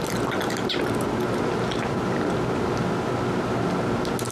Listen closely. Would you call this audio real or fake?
real